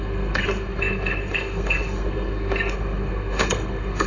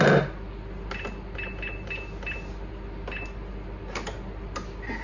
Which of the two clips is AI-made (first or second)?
first